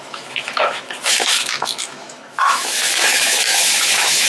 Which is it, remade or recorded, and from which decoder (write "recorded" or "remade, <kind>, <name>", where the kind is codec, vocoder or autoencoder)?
remade, autoencoder, DAC-VAE